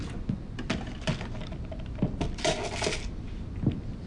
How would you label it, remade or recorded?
recorded